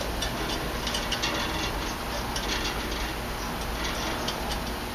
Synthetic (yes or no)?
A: no